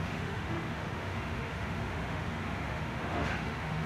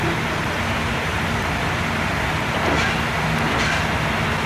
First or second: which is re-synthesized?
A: first